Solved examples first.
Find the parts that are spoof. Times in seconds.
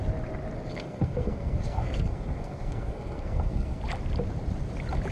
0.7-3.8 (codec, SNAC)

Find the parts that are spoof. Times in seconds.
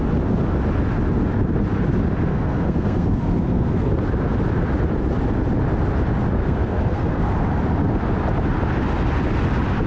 2.3-3.9 (codec, SNAC); 6.4-7.3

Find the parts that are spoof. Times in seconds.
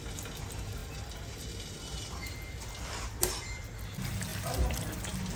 none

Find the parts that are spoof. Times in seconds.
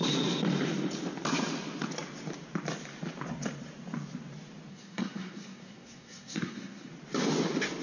4.7-6.9 (codec, SNAC)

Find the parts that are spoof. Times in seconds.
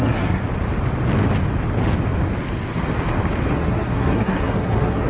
0.0-0.4 (codec, SNAC); 3.5-5.1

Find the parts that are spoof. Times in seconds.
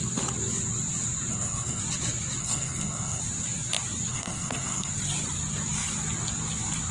1.3-1.8 (codec, SNAC); 2.4-3.2; 4.1-4.9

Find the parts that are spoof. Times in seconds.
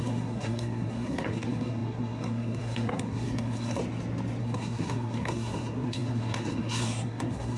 0.0-3.8 (codec, SNAC); 4.4-7.6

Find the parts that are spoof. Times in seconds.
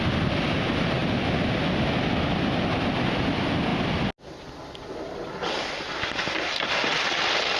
none